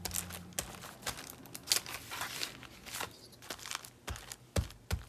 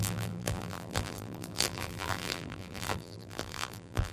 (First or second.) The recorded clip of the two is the first